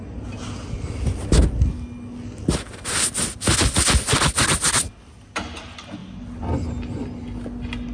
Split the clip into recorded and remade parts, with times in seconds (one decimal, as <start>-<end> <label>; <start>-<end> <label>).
0.0-7.9 recorded